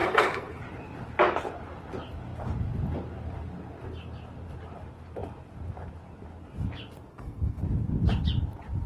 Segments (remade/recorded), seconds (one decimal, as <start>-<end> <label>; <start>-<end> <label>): 0.0-0.6 remade; 0.6-7.1 recorded; 7.1-7.6 remade; 7.6-8.9 recorded